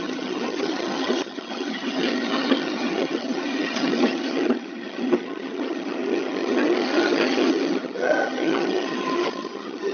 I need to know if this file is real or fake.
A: fake